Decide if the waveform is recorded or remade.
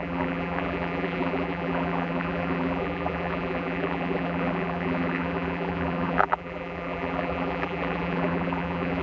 remade